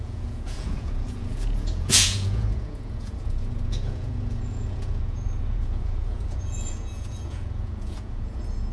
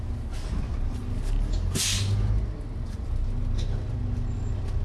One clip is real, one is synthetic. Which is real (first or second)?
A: second